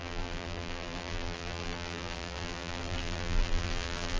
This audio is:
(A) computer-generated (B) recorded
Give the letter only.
A